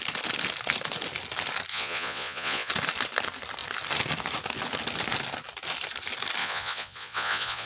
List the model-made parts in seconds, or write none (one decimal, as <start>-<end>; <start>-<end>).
1.7-2.7; 6.4-7.7